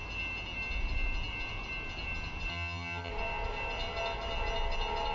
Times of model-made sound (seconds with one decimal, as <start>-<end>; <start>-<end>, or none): 2.5-3.1